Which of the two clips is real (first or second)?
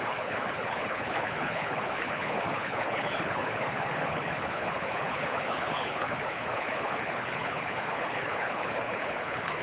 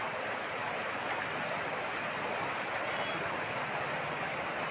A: second